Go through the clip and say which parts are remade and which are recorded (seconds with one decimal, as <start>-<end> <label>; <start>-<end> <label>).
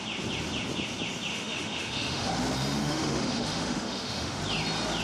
0.0-1.3 recorded; 1.3-2.3 remade; 2.3-2.8 recorded; 2.8-4.4 remade; 4.4-5.0 recorded